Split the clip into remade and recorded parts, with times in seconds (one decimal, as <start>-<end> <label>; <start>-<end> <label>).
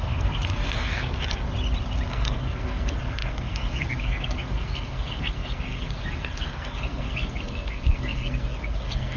0.0-1.5 remade; 1.5-2.1 recorded; 2.1-9.2 remade